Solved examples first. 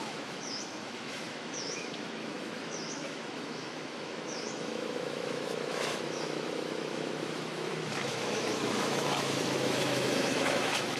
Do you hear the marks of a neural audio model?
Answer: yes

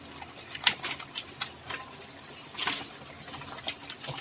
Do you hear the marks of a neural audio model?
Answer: no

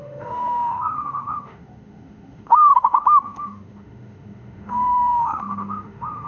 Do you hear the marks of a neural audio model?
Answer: yes